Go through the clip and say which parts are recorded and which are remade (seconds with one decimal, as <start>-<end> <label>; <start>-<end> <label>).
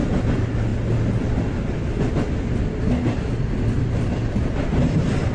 0.0-5.3 recorded